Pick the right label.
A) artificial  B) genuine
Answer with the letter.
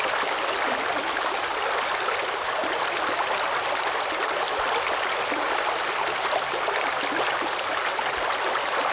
B